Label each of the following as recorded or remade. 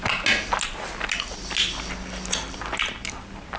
recorded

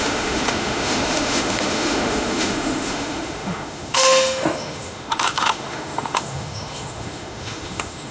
remade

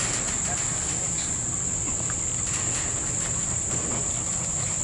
recorded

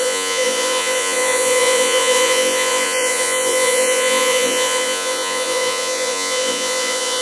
remade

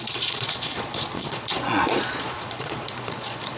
remade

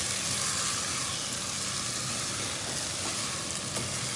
recorded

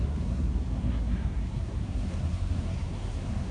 remade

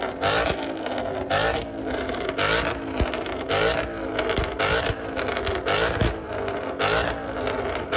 recorded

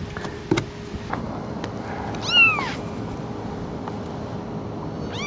recorded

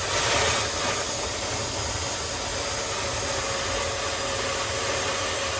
recorded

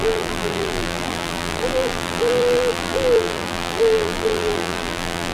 remade